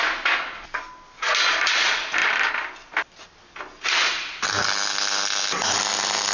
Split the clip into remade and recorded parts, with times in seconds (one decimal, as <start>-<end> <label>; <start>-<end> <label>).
0.0-6.3 recorded